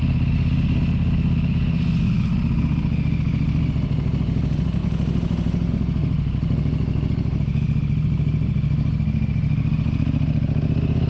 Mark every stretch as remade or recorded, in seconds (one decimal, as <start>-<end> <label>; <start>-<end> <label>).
0.0-11.1 recorded